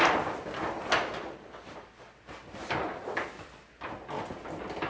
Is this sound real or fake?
real